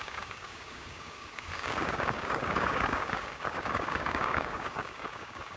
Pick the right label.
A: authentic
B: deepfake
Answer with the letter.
B